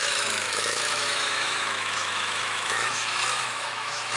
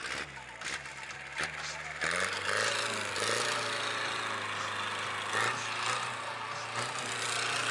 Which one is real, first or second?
second